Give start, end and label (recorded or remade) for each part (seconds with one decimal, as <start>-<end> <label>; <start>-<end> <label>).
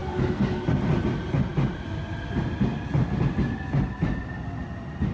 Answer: 0.0-0.7 remade; 0.7-5.1 recorded